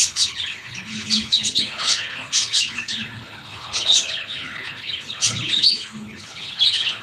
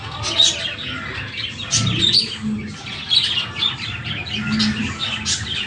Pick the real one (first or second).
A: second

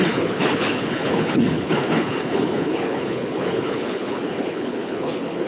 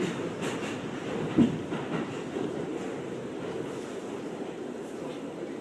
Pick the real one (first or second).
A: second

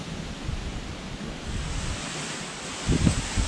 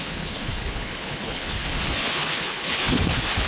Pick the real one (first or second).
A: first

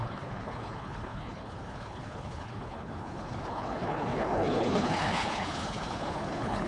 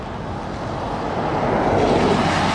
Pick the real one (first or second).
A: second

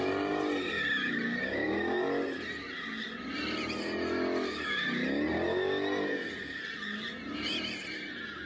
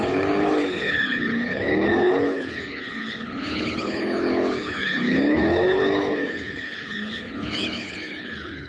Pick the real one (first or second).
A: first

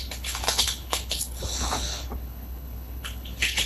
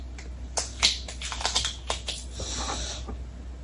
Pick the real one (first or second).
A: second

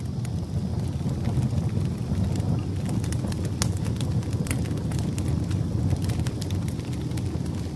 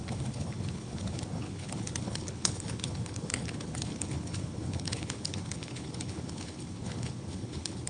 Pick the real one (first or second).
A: first